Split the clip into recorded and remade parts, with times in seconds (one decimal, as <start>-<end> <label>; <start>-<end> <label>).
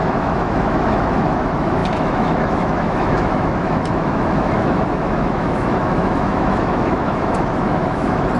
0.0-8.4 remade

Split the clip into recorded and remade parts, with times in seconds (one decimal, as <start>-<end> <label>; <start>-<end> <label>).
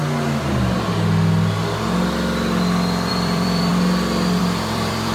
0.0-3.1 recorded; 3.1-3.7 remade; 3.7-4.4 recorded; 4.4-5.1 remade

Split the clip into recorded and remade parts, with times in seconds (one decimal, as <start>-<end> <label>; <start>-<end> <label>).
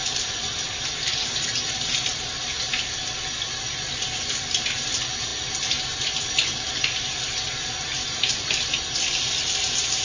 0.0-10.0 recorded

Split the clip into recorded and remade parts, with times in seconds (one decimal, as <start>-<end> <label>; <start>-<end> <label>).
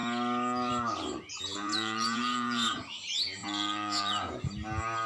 0.0-1.3 recorded; 1.3-2.8 remade; 2.8-3.4 recorded; 3.4-4.4 remade; 4.4-5.1 recorded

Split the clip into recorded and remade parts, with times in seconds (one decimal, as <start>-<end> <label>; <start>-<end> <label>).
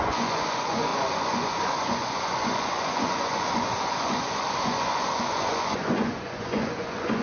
0.0-7.2 remade